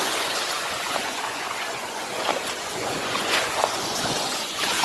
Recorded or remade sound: remade